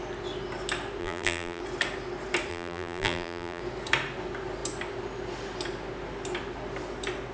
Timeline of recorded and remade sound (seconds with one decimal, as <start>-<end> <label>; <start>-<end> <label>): 0.0-1.0 recorded; 1.0-1.6 remade; 1.6-2.5 recorded; 2.5-3.6 remade; 3.6-7.3 recorded